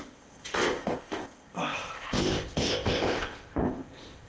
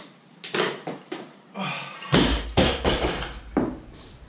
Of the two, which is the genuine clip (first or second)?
second